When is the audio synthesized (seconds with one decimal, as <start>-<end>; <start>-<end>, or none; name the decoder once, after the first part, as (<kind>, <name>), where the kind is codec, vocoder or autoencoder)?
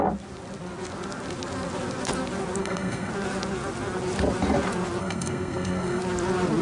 2.6-3.1 (codec, SNAC); 5.0-6.0